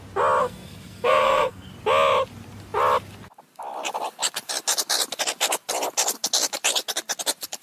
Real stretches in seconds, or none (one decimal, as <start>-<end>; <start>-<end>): 0.0-0.4; 1.7-7.6